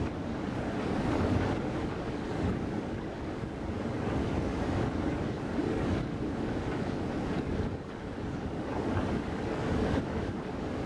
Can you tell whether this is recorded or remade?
remade